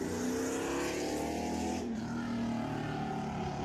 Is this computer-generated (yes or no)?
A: no